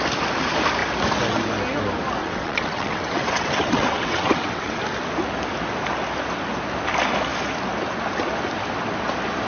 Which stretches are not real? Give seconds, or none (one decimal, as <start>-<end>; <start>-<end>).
2.2-4.8